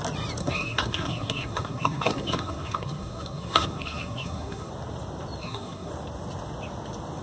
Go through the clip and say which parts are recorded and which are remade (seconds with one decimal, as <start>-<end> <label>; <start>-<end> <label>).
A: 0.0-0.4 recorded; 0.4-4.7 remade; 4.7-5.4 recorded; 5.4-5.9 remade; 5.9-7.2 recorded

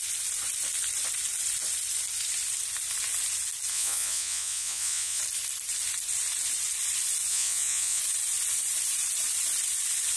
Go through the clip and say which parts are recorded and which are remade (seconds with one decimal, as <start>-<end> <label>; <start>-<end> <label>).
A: 0.0-3.7 recorded; 3.7-5.2 remade; 5.2-7.3 recorded; 7.3-8.0 remade; 8.0-10.2 recorded

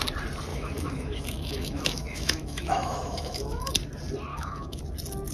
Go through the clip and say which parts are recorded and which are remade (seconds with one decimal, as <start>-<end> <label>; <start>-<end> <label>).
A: 0.0-0.5 recorded; 0.5-3.7 remade; 3.7-4.3 recorded; 4.3-4.8 remade; 4.8-5.3 recorded